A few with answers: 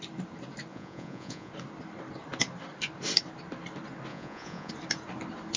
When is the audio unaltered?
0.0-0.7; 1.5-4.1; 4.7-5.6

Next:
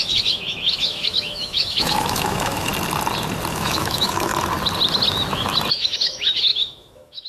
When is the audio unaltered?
2.7-3.5; 4.3-5.7

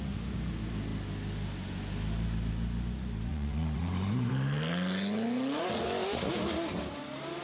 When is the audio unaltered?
0.0-3.3; 4.3-7.4

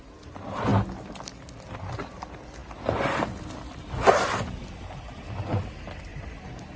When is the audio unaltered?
0.0-6.1

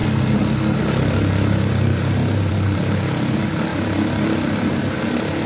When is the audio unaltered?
0.0-0.7

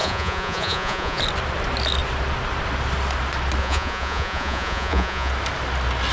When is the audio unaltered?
1.2-3.6; 5.3-6.1

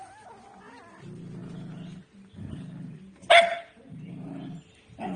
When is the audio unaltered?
0.0-5.2